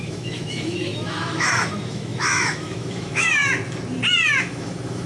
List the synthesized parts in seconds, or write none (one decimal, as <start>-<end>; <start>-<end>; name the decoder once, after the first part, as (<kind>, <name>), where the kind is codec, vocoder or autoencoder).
0.0-3.4 (autoencoder, DAC-VAE); 4.4-5.1